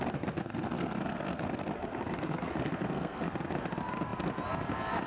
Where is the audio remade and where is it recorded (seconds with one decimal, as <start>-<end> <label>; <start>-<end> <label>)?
0.0-0.4 recorded; 0.4-3.5 remade; 3.5-5.1 recorded